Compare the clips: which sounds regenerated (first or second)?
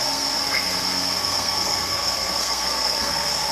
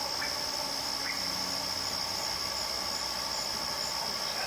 first